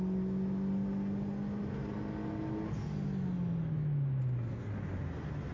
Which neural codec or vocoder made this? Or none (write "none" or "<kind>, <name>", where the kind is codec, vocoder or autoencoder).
none